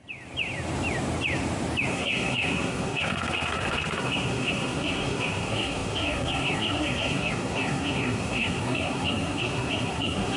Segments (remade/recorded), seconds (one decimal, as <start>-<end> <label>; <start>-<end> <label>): 0.0-1.9 recorded; 1.9-10.4 remade